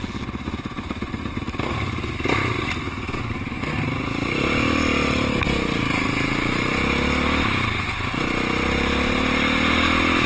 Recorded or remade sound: recorded